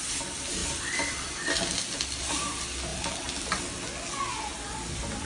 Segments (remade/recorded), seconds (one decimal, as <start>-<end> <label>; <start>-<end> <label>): 0.0-0.6 recorded; 0.6-1.7 remade; 1.7-4.5 recorded; 4.5-5.3 remade